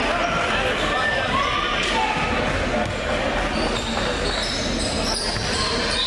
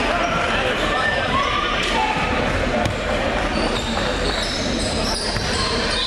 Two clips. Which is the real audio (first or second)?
first